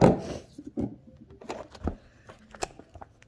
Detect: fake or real real